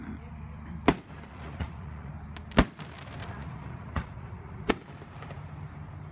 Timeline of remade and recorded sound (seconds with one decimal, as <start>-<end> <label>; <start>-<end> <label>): 0.0-1.3 recorded; 1.3-2.1 remade; 2.1-3.2 recorded; 3.2-4.7 remade; 4.7-6.1 recorded